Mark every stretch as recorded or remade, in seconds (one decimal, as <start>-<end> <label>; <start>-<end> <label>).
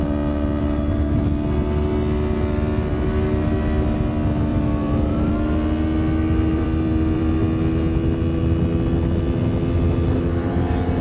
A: 0.0-4.5 recorded; 4.5-5.3 remade; 5.3-6.5 recorded; 6.5-7.4 remade; 7.4-11.0 recorded